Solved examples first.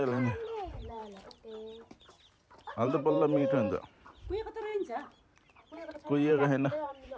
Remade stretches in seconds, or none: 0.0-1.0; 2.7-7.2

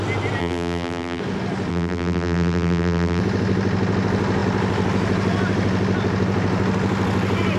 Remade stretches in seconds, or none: 0.4-1.2; 1.7-3.2

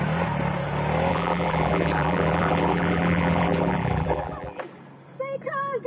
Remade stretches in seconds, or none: 1.1-4.6

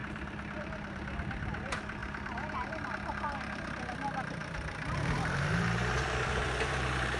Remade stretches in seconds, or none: 0.0-7.2

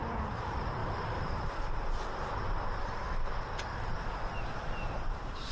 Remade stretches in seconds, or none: 0.8-1.6

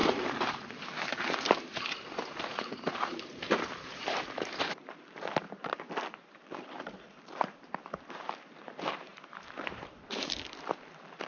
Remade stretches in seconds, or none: 0.0-11.3

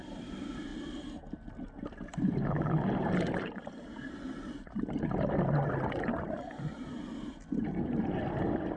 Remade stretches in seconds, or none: 0.0-0.7; 2.9-3.9

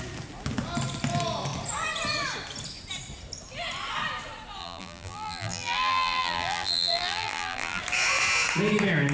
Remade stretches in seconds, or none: 4.6-7.8